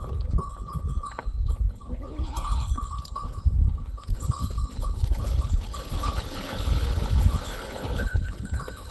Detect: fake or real fake